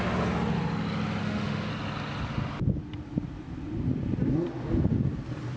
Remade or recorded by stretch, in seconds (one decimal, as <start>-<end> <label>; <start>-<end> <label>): 0.0-1.2 recorded; 1.2-1.7 remade; 1.7-5.6 recorded